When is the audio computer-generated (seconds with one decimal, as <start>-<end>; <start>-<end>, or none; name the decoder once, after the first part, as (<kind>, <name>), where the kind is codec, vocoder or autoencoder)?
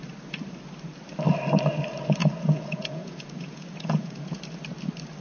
2.2-4.4 (vocoder, Vocos)